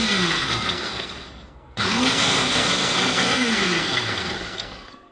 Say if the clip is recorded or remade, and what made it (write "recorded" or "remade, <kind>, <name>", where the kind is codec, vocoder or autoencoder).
remade, codec, SNAC